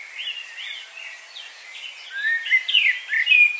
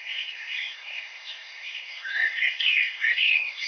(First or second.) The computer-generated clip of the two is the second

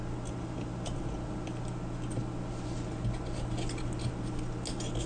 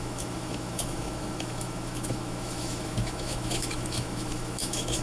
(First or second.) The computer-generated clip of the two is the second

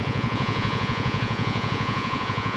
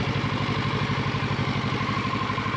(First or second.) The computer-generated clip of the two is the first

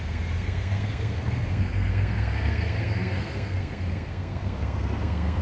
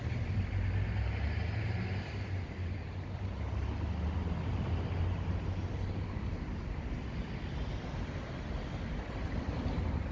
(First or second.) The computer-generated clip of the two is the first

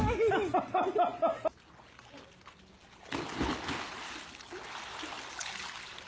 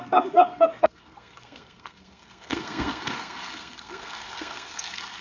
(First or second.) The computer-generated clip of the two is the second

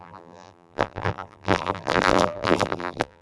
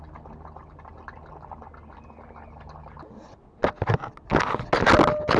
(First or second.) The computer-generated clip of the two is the first